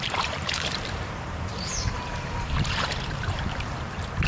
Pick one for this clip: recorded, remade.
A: remade